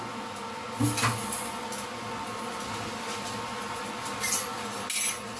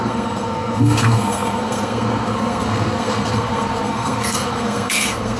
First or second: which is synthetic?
second